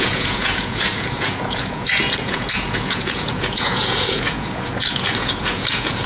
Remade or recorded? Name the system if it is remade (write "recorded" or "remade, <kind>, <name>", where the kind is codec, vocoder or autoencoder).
remade, vocoder, Vocos